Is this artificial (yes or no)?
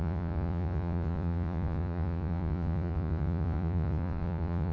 yes